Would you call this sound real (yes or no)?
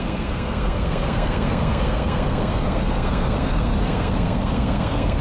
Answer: no